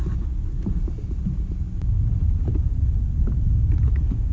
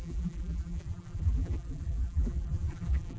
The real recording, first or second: first